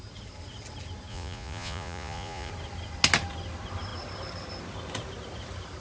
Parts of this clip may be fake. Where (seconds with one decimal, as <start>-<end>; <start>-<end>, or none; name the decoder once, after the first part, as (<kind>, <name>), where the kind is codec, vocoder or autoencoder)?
1.1-2.5 (vocoder, Vocos)